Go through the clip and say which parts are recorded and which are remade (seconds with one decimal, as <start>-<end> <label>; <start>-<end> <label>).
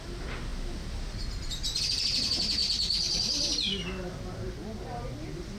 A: 0.0-2.6 recorded; 2.6-3.5 remade; 3.5-5.6 recorded